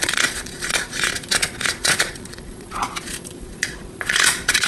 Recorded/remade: remade